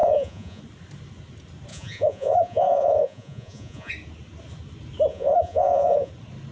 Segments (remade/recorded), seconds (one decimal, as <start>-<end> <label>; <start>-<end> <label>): 0.0-0.6 remade; 0.6-1.7 recorded; 1.7-3.9 remade; 3.9-5.1 recorded; 5.1-6.1 remade; 6.1-6.5 recorded